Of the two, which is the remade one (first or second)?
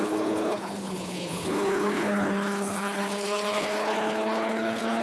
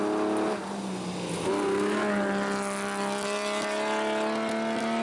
first